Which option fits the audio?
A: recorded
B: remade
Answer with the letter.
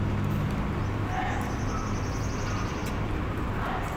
A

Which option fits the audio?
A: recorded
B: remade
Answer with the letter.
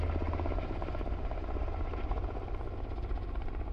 A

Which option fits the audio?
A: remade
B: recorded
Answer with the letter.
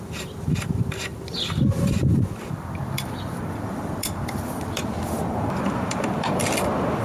A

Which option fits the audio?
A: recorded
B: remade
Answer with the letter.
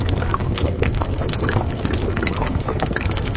B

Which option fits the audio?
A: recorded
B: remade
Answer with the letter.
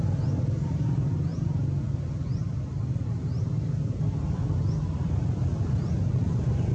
A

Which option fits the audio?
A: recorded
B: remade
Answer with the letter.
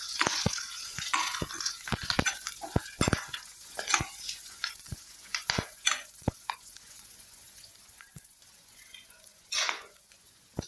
B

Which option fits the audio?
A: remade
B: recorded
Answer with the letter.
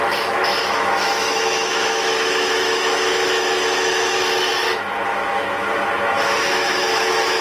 A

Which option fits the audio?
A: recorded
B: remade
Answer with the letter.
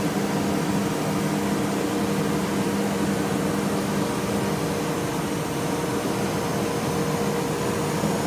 A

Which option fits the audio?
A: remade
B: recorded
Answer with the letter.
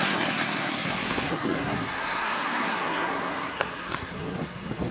A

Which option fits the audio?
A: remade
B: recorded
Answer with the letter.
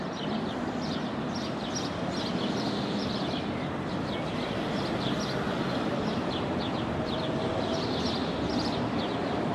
B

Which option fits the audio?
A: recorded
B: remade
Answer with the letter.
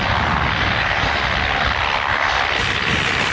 B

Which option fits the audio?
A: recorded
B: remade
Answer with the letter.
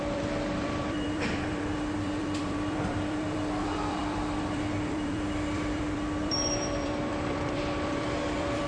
B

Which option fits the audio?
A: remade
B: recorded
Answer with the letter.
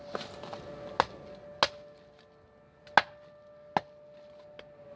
B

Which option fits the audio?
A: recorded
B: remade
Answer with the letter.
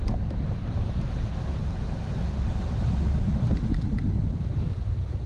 A